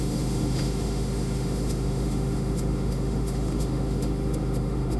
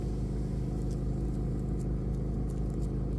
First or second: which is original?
second